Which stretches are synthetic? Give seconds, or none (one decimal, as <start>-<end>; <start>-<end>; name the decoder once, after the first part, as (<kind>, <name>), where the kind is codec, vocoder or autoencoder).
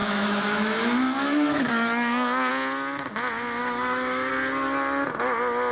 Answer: 0.0-2.5 (autoencoder, DAC-VAE); 3.6-4.3